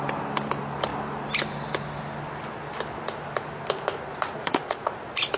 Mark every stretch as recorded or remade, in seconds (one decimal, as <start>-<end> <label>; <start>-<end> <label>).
0.0-4.4 recorded; 4.4-5.0 remade; 5.0-5.4 recorded